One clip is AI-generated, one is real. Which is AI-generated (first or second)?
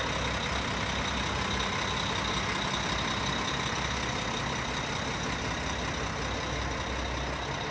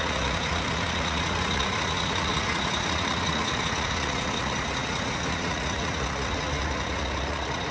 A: second